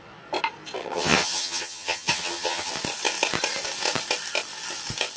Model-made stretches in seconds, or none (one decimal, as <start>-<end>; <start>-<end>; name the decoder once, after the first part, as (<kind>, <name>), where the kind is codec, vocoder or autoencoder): 0.8-2.7 (vocoder, HiFi-GAN)